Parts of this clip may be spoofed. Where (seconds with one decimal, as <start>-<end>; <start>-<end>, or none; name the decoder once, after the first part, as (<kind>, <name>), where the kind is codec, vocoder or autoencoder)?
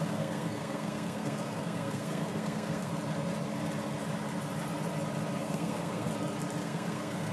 0.0-2.9 (codec, SNAC); 5.4-6.1; 6.6-7.3